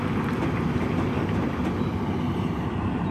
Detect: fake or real fake